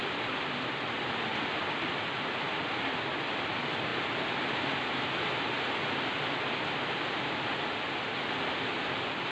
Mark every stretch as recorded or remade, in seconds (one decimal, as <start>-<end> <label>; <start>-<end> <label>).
0.0-9.3 recorded